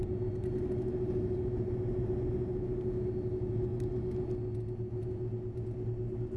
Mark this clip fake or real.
real